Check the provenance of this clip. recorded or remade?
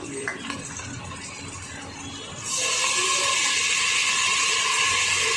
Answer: recorded